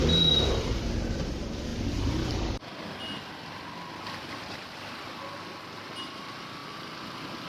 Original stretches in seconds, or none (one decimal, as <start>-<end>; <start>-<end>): 0.0-6.6